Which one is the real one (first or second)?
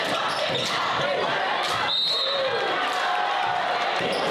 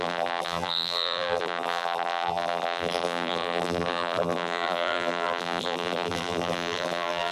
first